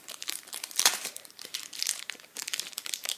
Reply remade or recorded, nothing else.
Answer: remade